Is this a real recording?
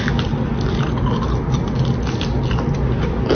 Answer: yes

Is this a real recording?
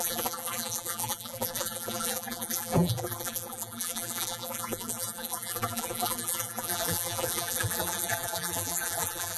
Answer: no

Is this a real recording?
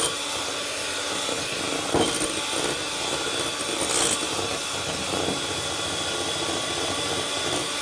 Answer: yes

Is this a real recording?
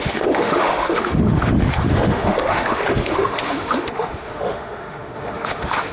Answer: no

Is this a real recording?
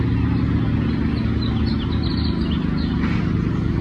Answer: yes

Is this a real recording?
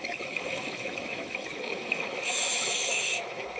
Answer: no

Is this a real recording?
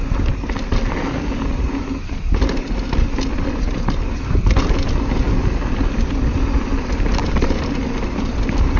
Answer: yes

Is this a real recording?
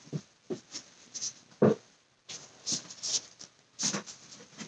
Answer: yes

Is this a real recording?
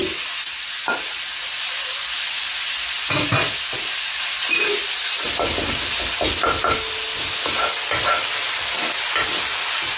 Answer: yes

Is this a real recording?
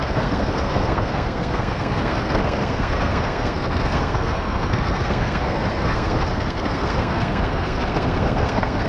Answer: no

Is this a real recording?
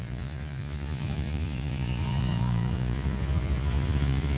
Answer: no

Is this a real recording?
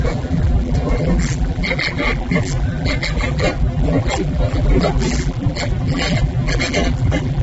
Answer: no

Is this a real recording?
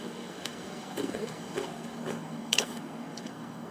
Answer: no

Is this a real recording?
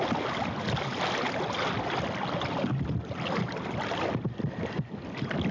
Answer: yes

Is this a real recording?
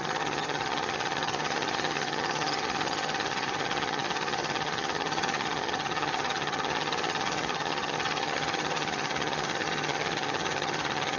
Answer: no